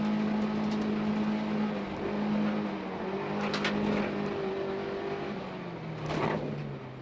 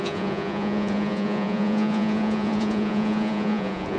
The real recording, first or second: first